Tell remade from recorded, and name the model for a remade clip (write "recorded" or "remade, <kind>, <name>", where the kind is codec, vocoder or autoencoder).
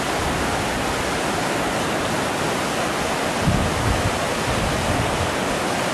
recorded